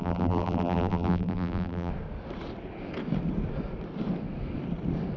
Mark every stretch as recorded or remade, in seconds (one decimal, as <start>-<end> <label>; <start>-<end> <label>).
0.0-1.9 remade; 1.9-5.2 recorded

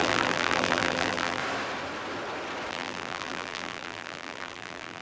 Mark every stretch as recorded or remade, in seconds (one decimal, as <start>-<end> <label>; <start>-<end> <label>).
0.0-1.4 remade; 1.4-2.7 recorded; 2.7-5.0 remade

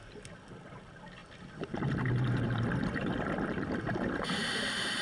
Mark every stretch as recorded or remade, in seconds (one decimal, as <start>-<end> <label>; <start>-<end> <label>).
0.0-5.0 recorded

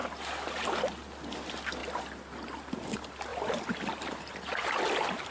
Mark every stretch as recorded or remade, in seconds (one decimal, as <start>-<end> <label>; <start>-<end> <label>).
0.0-1.8 recorded; 1.8-2.6 remade; 2.6-3.3 recorded; 3.3-4.8 remade; 4.8-5.3 recorded

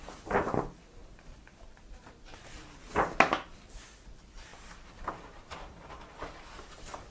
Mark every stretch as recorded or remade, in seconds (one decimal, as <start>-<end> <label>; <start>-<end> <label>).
0.0-7.1 recorded